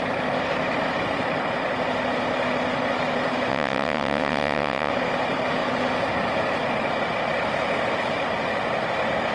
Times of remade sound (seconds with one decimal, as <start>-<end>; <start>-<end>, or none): 3.5-4.9